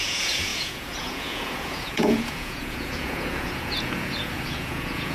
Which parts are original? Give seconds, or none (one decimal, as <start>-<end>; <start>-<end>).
none